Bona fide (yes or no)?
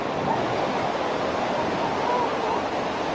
yes